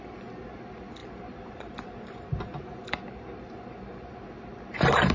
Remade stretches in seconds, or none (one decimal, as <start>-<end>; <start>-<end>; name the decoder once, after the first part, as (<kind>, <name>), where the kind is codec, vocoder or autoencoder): 1.0-4.1 (vocoder, BigVGAN v2)